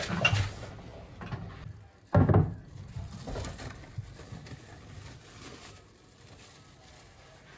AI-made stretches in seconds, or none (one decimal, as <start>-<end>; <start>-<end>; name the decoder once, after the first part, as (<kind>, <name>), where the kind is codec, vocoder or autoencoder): none